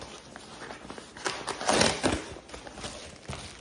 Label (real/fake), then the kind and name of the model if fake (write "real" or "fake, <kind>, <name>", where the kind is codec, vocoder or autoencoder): real